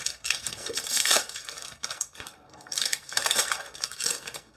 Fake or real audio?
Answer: fake